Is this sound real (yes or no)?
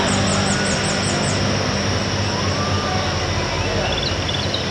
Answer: yes